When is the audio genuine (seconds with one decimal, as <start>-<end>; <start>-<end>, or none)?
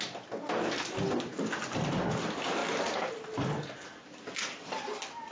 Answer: 0.0-5.3